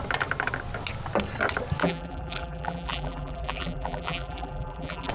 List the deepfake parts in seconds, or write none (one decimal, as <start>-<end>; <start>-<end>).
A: 1.8-5.1